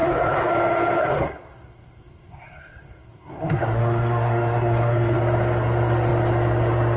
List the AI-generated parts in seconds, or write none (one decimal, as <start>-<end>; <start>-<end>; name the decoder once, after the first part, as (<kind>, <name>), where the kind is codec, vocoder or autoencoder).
0.0-0.5 (codec, SNAC); 1.0-5.2

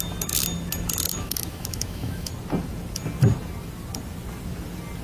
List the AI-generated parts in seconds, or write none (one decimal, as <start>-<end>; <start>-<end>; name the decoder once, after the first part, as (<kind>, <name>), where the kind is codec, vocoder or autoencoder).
1.1-2.3 (autoencoder, DAC-VAE)

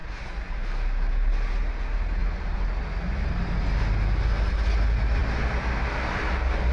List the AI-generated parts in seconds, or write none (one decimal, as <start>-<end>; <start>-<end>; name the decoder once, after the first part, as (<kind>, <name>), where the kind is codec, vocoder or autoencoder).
none